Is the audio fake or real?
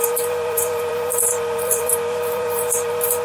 fake